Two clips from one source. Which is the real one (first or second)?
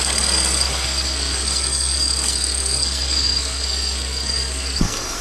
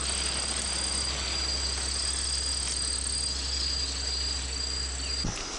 second